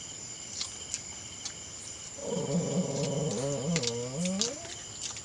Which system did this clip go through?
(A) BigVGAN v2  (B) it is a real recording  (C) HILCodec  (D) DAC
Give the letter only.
B